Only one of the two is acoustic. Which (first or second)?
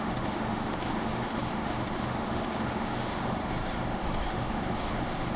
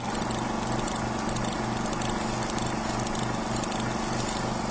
second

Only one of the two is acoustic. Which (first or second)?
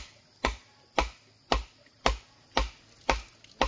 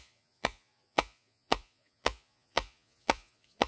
first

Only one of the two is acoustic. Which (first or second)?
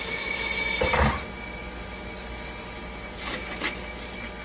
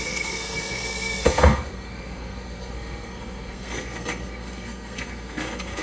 first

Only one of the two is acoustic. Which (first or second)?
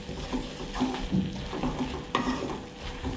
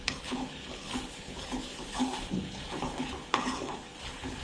first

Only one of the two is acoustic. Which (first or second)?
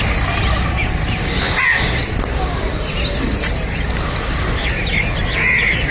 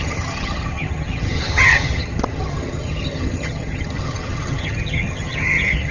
first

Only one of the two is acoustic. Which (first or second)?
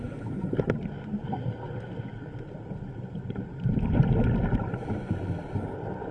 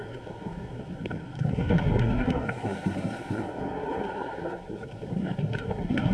first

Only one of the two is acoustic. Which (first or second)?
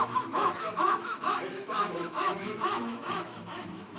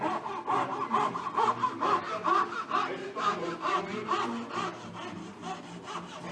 second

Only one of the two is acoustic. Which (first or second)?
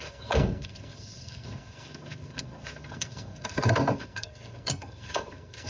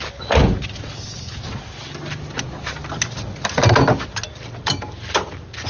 second